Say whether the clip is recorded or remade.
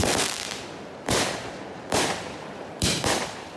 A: remade